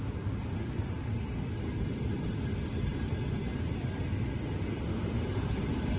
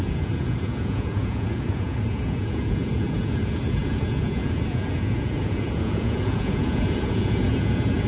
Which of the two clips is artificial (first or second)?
second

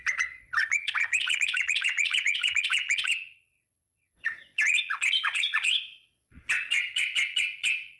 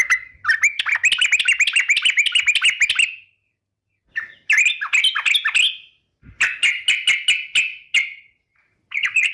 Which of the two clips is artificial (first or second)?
first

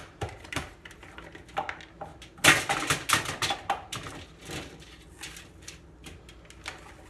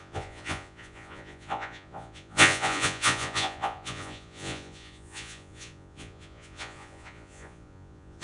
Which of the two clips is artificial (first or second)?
second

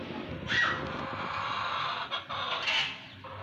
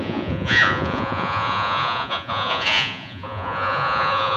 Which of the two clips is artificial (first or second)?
second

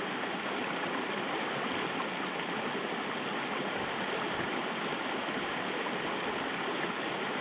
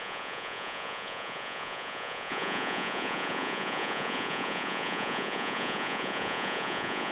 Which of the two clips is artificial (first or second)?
second